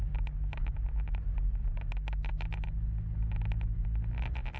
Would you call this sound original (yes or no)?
yes